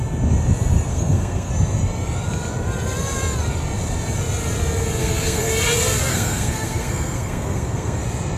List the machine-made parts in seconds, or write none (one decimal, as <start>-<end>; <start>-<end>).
0.9-1.5; 5.0-5.5; 6.1-8.0